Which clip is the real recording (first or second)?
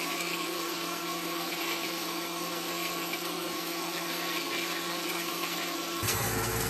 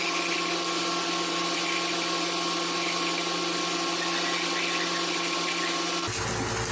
second